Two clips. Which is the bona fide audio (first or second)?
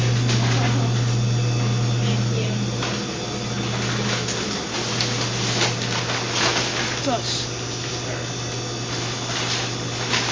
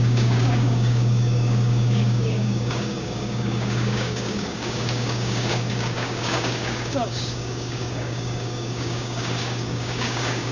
first